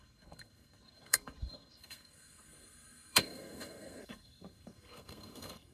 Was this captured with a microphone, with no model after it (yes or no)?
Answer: no